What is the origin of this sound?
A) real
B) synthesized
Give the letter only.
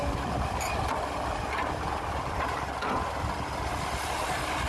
A